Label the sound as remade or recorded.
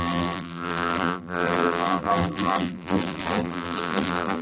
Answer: remade